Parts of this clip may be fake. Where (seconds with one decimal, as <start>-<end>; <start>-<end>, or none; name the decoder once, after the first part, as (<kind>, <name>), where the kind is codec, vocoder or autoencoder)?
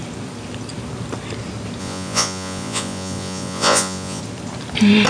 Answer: 1.8-4.2 (vocoder, Vocos)